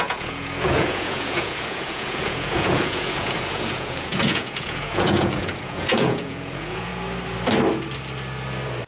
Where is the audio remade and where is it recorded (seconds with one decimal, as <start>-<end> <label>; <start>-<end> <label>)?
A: 0.0-6.9 remade; 6.9-8.9 recorded